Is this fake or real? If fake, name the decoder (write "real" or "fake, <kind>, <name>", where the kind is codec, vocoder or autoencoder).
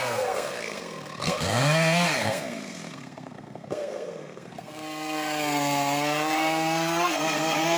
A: fake, codec, SNAC